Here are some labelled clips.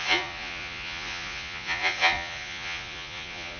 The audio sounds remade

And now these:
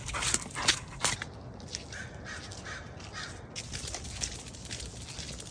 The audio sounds recorded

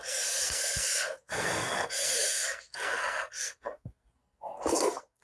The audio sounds remade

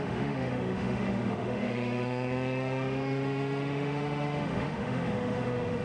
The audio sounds remade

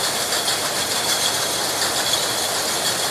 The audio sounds recorded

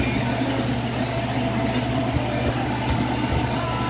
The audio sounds recorded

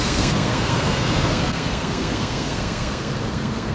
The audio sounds remade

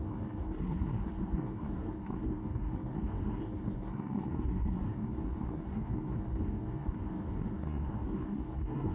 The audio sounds remade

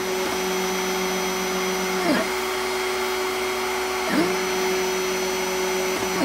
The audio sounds recorded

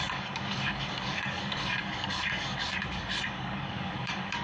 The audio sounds remade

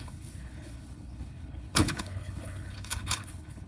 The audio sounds remade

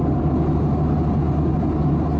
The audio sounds recorded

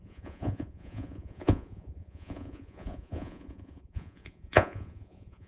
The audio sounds remade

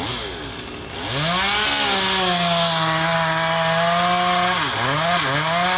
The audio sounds recorded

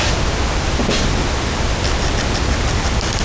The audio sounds remade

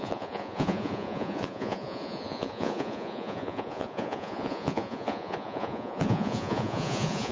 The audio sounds remade